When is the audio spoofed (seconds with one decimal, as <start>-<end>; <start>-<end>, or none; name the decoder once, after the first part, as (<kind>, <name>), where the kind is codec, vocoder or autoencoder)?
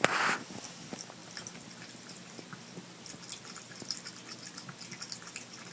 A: none